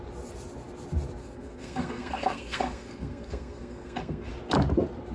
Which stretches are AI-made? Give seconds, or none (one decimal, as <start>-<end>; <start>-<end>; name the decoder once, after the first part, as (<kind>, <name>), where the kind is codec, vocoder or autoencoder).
1.2-4.3 (codec, SNAC)